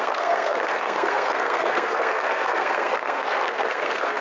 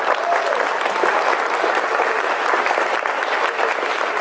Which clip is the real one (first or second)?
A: second